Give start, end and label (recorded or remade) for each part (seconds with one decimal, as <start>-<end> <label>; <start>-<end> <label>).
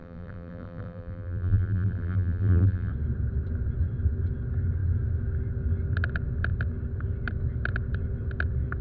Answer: 0.0-2.9 remade; 2.9-8.8 recorded